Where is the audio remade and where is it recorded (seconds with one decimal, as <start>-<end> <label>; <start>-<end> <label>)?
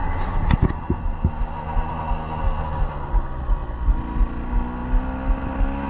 0.0-2.1 remade; 2.1-5.9 recorded